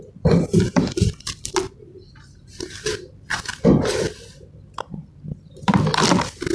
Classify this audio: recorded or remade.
remade